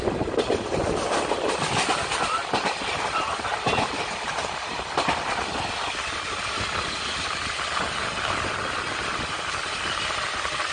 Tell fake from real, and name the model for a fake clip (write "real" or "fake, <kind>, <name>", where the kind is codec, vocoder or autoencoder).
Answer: real